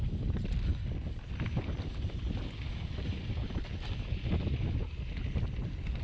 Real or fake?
real